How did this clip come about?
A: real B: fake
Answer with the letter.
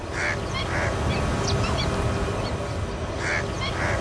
A